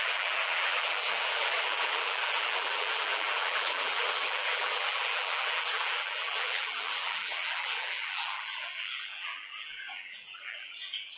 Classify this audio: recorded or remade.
remade